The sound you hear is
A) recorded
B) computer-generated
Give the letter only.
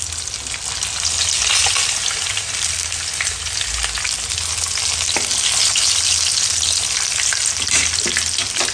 A